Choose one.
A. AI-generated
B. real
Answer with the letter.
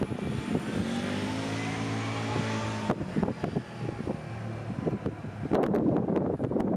B